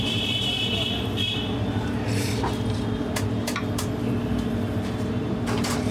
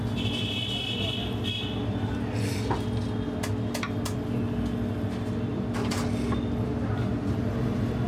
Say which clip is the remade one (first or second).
first